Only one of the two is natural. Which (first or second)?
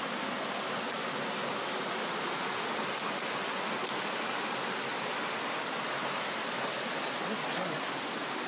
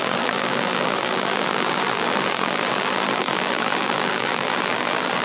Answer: first